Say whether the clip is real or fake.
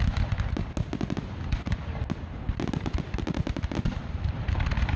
real